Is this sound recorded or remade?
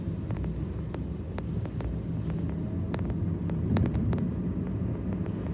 recorded